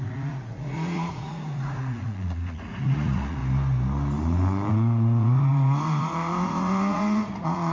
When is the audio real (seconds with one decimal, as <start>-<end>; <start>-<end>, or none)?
3.4-4.7